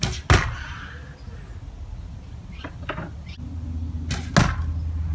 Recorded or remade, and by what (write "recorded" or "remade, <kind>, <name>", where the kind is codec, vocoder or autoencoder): recorded